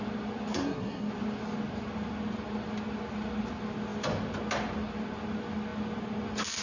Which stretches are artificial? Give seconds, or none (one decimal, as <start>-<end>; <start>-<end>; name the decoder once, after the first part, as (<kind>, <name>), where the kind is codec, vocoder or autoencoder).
0.5-1.1 (codec, SNAC)